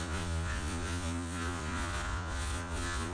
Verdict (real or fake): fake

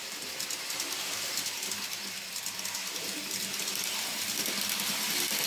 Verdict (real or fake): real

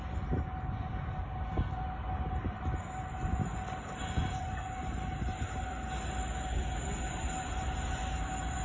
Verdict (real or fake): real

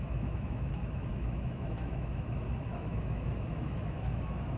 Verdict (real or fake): fake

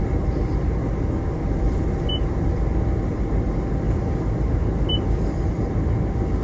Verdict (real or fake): real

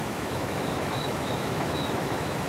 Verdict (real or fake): fake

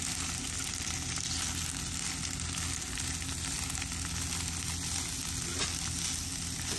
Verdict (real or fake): real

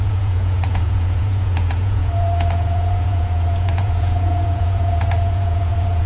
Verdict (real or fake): fake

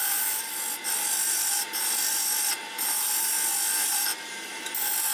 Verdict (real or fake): real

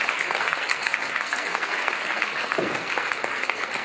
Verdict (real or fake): fake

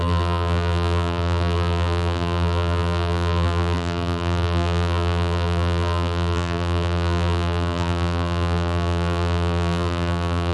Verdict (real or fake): fake